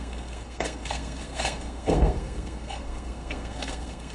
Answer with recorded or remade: remade